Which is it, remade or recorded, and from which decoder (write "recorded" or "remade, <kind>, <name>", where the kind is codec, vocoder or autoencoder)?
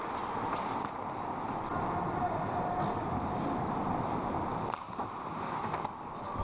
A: recorded